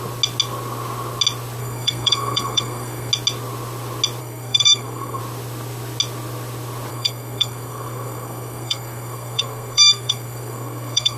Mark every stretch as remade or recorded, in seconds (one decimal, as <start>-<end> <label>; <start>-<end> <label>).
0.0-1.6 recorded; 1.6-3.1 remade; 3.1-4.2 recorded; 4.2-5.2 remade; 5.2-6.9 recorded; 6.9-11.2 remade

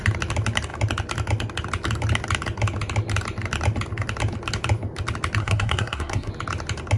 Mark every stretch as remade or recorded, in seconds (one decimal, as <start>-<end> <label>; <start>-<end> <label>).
0.0-5.4 recorded; 5.4-6.3 remade; 6.3-7.0 recorded

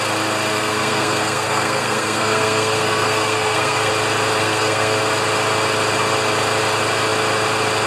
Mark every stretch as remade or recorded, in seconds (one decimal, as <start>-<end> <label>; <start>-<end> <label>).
0.0-0.5 recorded; 0.5-3.9 remade; 3.9-4.4 recorded; 4.4-5.0 remade; 5.0-7.9 recorded

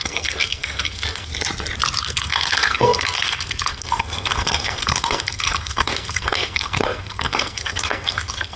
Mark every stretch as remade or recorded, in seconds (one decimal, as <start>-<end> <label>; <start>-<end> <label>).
0.0-1.3 remade; 1.3-2.0 recorded; 2.0-8.6 remade

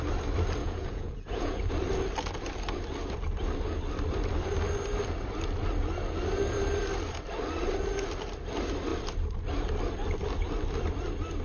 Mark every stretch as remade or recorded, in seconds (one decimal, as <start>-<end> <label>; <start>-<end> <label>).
0.0-0.6 recorded; 0.6-1.7 remade; 1.7-11.4 recorded